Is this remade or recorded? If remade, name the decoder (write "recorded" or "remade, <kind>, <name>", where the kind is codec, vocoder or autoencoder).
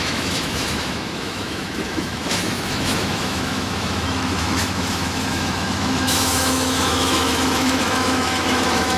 remade, autoencoder, DAC-VAE